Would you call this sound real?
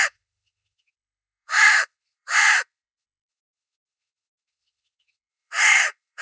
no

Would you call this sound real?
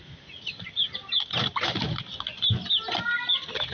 yes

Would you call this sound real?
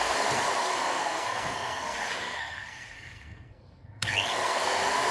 no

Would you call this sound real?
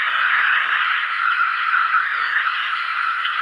no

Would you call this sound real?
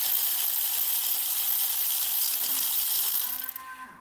yes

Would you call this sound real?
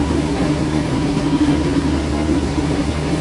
no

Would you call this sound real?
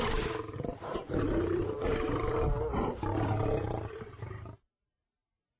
no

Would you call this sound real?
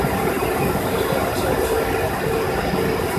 yes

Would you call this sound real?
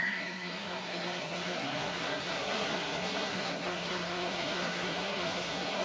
no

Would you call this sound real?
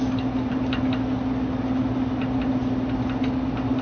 yes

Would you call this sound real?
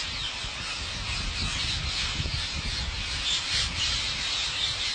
yes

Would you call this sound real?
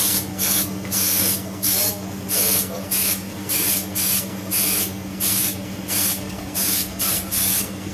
no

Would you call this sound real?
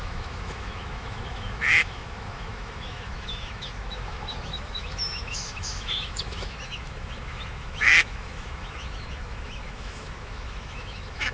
no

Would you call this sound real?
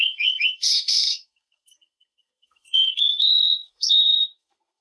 no